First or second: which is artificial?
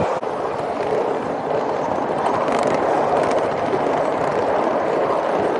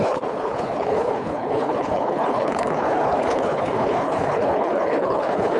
second